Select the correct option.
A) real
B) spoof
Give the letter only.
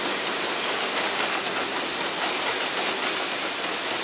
A